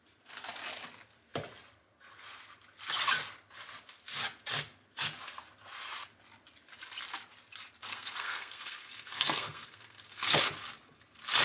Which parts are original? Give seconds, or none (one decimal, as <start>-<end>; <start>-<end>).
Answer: 0.0-7.9; 10.4-11.4